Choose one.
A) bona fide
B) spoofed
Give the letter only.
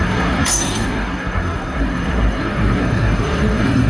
B